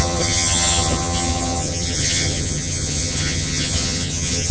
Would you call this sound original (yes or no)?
no